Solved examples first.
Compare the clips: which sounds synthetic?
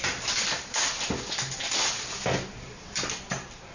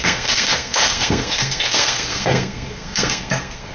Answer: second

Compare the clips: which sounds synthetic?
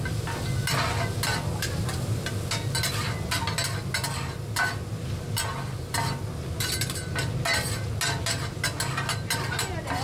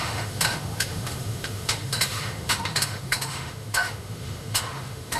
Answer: second